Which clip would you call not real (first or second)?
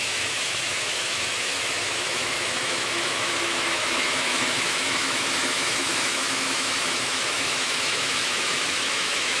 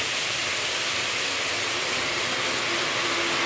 first